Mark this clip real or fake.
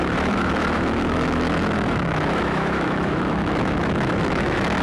fake